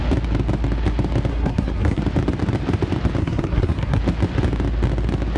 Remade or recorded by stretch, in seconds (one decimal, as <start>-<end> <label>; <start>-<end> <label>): 0.0-1.3 recorded; 1.3-2.0 remade; 2.0-3.2 recorded; 3.2-4.0 remade; 4.0-5.4 recorded